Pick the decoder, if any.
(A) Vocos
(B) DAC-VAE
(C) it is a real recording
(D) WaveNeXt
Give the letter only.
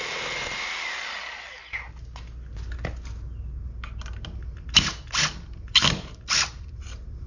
C